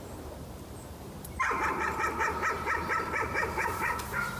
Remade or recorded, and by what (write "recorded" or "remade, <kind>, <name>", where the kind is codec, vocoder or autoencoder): remade, vocoder, BigVGAN v2